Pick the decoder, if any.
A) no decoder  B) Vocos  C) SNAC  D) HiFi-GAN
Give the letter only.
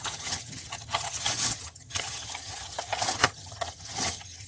D